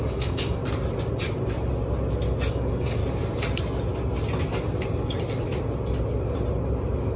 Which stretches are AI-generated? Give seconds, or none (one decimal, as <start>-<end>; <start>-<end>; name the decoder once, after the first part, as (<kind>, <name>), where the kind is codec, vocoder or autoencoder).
0.0-0.6 (codec, DAC); 2.5-3.0